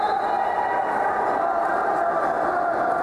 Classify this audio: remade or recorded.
recorded